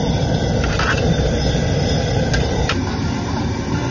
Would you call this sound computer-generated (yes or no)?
no